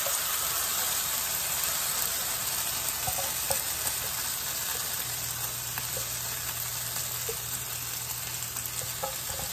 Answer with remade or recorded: recorded